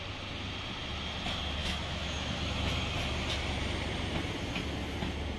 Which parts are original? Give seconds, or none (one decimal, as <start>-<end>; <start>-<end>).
0.0-1.6; 2.7-5.4